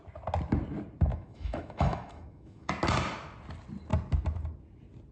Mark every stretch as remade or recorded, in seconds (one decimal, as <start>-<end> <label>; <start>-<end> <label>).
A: 0.0-1.1 recorded; 1.1-2.7 remade; 2.7-5.1 recorded